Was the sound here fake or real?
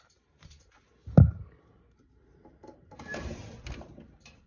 fake